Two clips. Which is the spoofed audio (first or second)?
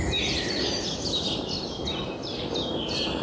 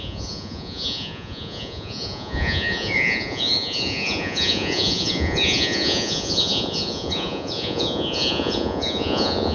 second